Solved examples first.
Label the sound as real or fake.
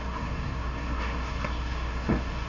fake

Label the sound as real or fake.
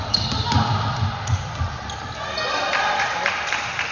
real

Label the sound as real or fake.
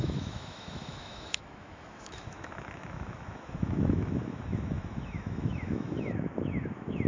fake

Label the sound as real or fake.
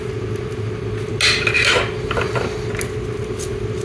real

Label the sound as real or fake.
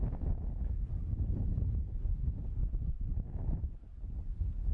real